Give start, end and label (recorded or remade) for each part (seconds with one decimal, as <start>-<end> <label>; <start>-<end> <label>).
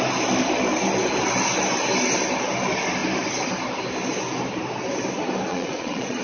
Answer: 0.0-5.5 recorded; 5.5-6.2 remade